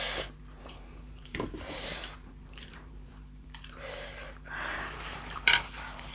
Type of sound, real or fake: fake